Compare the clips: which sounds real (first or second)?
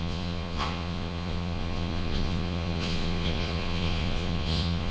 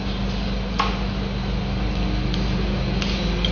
second